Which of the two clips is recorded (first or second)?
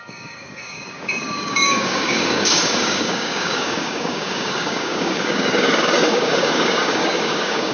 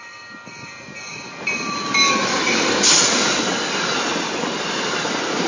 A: second